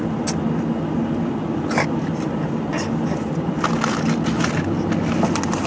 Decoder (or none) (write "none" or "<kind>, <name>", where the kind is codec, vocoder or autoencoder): none